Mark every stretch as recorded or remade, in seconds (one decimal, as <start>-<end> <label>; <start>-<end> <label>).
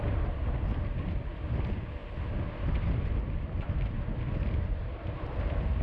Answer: 0.0-0.4 remade; 0.4-1.2 recorded; 1.2-2.0 remade; 2.0-5.8 recorded